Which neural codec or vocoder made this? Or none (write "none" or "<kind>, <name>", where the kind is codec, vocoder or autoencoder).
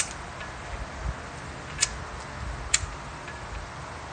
none